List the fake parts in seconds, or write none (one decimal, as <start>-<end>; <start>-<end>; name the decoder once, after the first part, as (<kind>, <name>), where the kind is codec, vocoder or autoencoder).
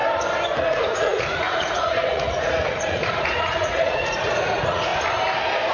0.6-4.9 (vocoder, Vocos)